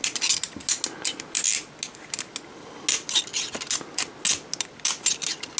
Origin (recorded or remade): recorded